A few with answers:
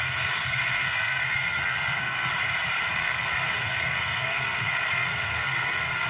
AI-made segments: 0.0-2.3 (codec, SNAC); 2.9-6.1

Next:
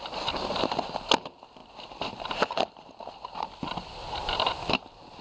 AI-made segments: none

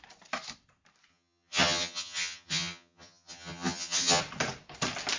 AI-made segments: 1.1-4.2 (vocoder, HiFi-GAN)

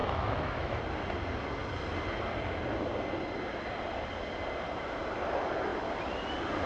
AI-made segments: 0.0-0.8 (autoencoder, DAC-VAE)

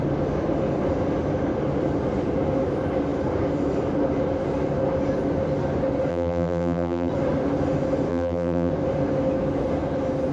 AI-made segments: 6.1-7.1 (vocoder, BigVGAN v2); 8.1-8.7

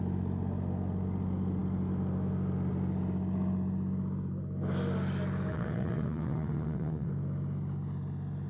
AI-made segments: 5.5-7.1 (vocoder, WaveNeXt)